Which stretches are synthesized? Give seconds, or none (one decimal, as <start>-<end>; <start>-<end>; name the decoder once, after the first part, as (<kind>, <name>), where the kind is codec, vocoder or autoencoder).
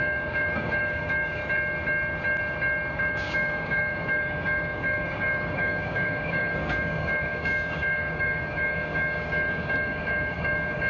0.0-1.4 (codec, DAC); 3.0-10.9